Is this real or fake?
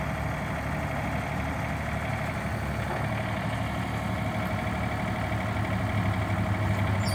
real